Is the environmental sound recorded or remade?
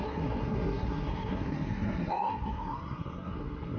remade